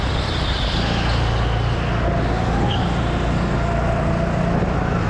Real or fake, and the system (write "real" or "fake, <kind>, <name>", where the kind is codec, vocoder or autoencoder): real